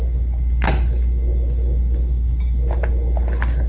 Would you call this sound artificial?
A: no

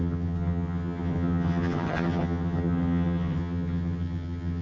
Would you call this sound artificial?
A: yes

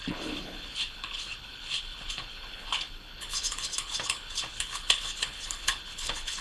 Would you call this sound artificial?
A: yes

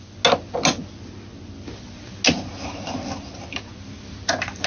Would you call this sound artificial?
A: no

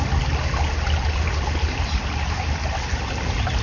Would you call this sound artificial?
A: no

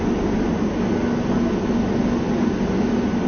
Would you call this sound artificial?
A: no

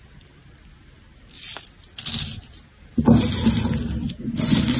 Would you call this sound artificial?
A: no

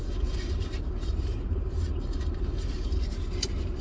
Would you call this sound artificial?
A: yes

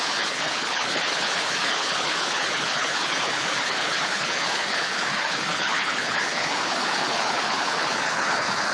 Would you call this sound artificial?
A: yes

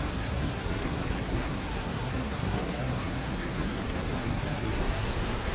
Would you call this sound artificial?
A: yes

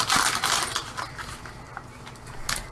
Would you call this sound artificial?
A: no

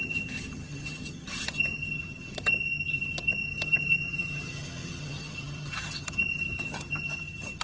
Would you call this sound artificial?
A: yes